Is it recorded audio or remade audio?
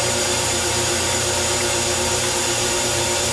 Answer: remade